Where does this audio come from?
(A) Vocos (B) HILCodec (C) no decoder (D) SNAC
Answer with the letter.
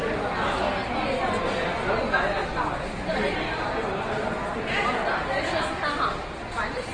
C